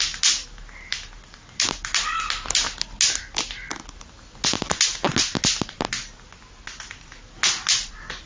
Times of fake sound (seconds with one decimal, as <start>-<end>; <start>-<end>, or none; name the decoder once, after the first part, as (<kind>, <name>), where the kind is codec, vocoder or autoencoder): none